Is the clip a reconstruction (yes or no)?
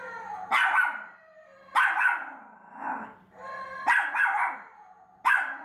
no